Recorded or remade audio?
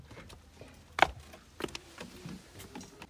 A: recorded